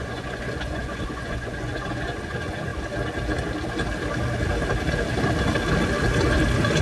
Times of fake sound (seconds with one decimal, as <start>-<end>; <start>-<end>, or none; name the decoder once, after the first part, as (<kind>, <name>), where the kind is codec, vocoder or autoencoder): 0.0-2.7 (vocoder, Vocos)